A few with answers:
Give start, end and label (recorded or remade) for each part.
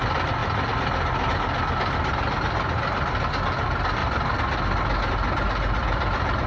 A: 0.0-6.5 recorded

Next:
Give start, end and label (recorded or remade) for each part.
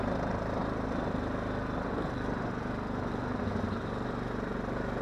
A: 0.0-5.0 recorded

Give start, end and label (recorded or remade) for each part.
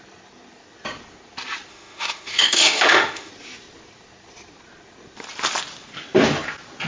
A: 0.0-1.7 recorded; 1.7-3.3 remade; 3.3-6.9 recorded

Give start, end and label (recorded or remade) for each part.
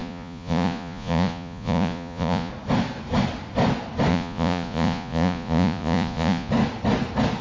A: 0.0-2.5 remade; 2.5-4.1 recorded; 4.1-6.5 remade; 6.5-7.4 recorded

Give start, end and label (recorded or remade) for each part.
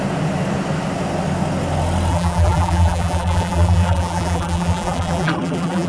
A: 0.0-2.1 recorded; 2.1-5.9 remade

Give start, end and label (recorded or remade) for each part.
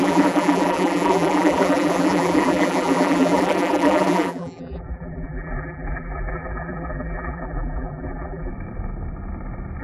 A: 0.0-8.5 remade; 8.5-9.8 recorded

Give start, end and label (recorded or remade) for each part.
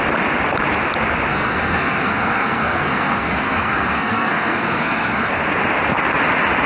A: 0.0-1.3 recorded; 1.3-5.3 remade; 5.3-6.7 recorded